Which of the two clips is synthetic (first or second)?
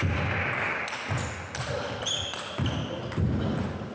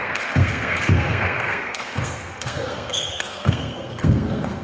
second